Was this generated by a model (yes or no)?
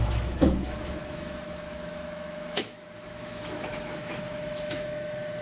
yes